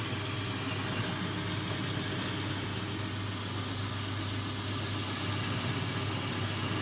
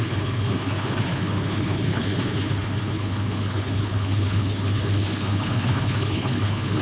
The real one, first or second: first